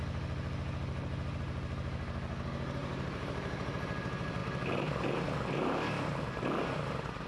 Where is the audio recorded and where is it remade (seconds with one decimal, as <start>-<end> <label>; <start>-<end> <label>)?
0.0-2.8 recorded; 2.8-3.7 remade; 3.7-7.3 recorded